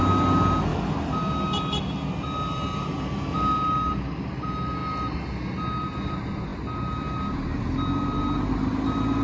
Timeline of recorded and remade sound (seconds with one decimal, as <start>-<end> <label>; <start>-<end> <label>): 0.0-9.2 recorded